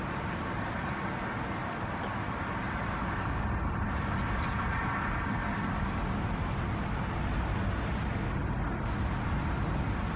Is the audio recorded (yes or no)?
yes